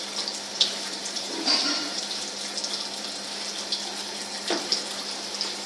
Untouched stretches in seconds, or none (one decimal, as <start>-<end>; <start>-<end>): 0.0-0.5; 2.0-5.7